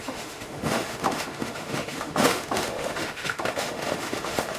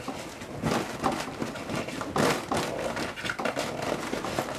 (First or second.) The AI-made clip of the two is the first